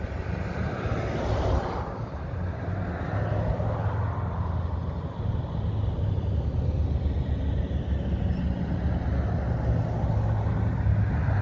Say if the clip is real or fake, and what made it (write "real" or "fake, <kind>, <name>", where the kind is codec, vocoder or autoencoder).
real